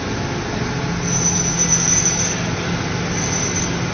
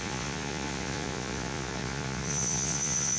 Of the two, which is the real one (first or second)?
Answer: first